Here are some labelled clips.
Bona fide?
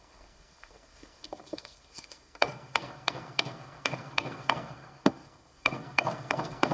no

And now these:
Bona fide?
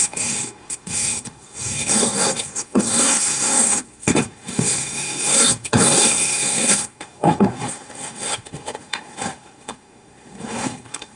no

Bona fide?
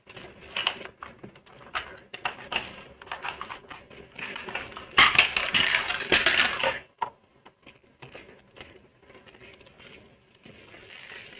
yes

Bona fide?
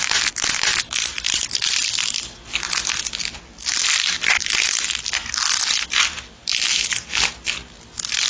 yes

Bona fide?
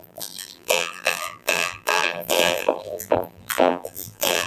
no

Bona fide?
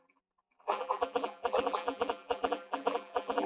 no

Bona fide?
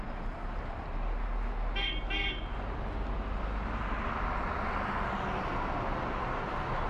yes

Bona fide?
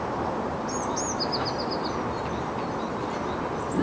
yes